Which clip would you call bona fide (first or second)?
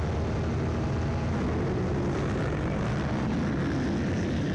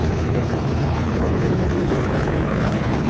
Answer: first